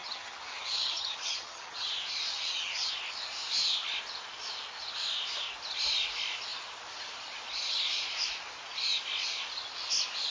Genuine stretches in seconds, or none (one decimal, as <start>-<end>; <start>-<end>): 1.9-2.3; 2.9-10.3

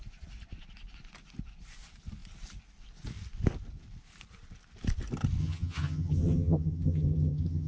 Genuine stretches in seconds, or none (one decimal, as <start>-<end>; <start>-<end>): 0.0-5.4

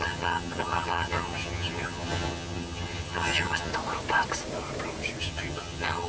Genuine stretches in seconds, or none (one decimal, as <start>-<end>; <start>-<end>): 3.7-5.2

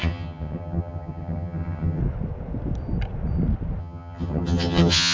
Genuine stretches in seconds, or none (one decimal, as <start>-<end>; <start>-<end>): 2.0-3.8

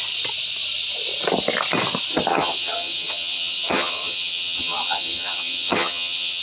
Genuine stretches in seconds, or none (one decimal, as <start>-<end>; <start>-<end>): 0.0-2.3

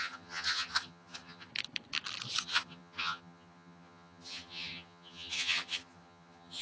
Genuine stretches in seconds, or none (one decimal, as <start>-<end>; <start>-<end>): 1.5-2.4

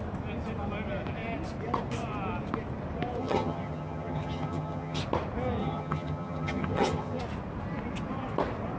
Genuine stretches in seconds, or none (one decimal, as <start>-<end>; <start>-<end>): 0.0-3.2; 5.0-5.6; 7.2-8.8

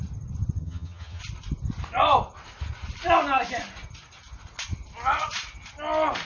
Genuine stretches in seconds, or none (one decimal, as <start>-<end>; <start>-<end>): 0.0-0.6; 1.2-6.2